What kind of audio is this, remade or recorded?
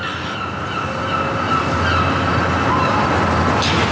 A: recorded